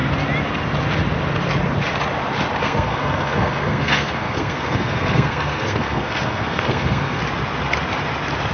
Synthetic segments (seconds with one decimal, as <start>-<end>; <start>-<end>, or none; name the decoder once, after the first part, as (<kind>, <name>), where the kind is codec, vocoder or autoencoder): 2.6-7.2 (codec, SNAC)